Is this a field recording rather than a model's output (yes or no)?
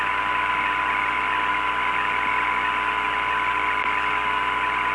yes